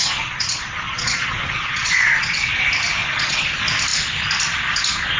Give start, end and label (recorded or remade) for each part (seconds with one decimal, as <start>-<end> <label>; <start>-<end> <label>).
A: 0.0-2.5 remade; 2.5-3.0 recorded; 3.0-3.5 remade; 3.5-5.2 recorded